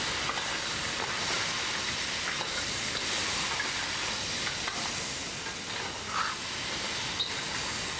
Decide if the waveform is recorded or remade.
recorded